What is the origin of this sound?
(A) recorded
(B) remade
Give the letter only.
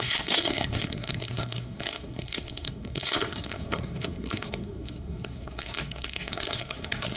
B